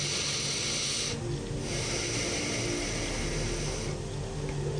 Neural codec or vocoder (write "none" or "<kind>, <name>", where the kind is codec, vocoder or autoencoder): none